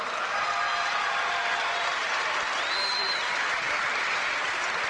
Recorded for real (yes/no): no